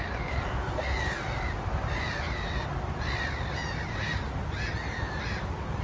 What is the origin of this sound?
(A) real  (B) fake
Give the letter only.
A